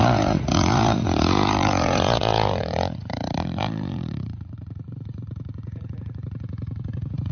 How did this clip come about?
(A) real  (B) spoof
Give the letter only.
B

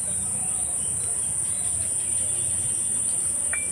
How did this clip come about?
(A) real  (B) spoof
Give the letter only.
A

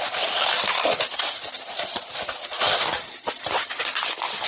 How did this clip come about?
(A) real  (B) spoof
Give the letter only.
A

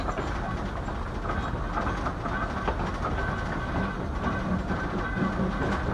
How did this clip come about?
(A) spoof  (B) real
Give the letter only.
B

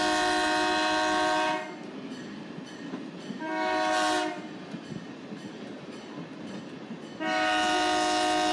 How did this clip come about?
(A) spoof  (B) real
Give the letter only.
B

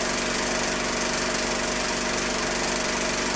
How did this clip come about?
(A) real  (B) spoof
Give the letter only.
A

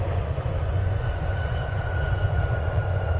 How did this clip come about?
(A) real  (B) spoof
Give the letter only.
B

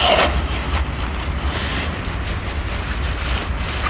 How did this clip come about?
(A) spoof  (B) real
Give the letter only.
B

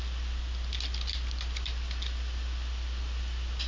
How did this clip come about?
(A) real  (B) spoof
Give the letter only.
A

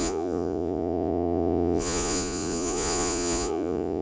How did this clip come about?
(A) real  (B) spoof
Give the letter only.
B